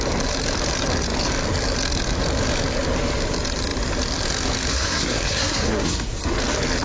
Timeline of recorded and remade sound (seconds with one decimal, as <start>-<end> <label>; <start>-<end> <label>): 0.0-4.7 recorded; 4.7-6.3 remade; 6.3-6.8 recorded